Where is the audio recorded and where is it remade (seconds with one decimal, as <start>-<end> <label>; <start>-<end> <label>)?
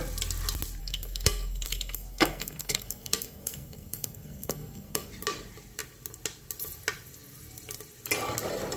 0.0-0.8 recorded; 0.8-5.1 remade; 5.1-8.8 recorded